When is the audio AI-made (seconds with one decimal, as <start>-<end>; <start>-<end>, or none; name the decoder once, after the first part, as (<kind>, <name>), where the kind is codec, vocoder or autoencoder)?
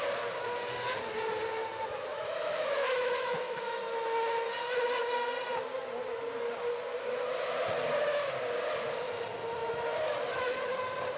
2.1-3.6 (autoencoder, DAC-VAE); 9.6-10.7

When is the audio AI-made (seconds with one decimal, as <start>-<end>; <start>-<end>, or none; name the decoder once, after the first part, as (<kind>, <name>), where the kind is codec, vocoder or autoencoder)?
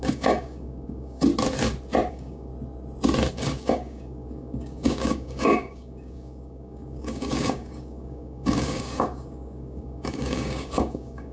0.0-1.3 (codec, DAC); 2.1-2.5; 3.3-11.3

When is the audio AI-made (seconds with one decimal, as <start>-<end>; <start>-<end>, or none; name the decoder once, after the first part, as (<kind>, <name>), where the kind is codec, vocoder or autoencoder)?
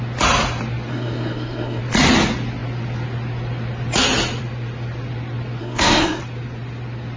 0.9-1.8 (codec, SNAC); 5.6-6.2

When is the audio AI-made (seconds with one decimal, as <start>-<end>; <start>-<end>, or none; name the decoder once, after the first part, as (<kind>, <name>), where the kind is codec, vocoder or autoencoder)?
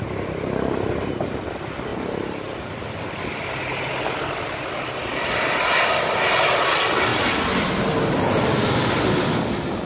1.9-5.8 (vocoder, BigVGAN v2); 7.1-9.4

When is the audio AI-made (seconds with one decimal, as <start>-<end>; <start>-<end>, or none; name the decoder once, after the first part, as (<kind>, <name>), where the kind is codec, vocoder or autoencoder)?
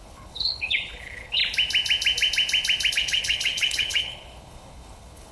0.0-1.4 (codec, HILCodec); 2.9-5.3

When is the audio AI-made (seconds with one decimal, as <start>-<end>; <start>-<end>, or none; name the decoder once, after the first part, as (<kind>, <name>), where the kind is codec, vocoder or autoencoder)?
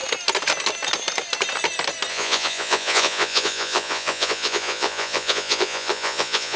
2.1-6.6 (vocoder, Vocos)